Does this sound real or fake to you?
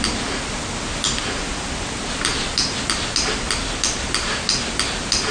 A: real